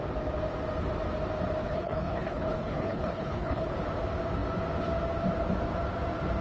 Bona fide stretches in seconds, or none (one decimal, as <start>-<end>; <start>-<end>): 0.0-1.6; 3.7-6.4